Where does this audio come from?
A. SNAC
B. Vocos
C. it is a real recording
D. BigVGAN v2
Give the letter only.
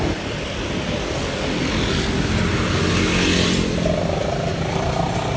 C